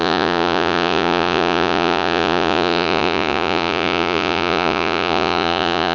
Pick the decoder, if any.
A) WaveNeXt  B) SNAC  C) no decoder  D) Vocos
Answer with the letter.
D